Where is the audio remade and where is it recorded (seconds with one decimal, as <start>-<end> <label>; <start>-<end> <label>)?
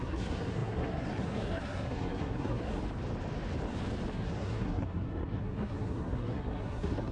0.0-2.8 remade; 2.8-4.1 recorded; 4.1-7.1 remade